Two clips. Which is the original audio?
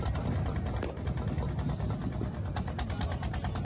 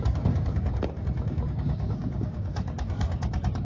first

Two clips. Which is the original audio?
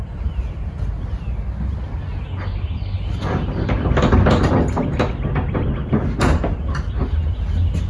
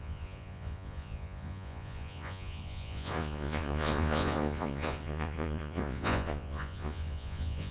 first